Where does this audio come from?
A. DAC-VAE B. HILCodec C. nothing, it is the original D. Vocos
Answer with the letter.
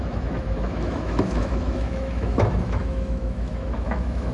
A